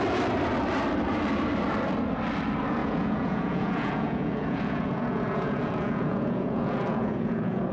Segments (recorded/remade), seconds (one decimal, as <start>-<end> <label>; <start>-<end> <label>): 0.0-2.8 recorded; 2.8-7.7 remade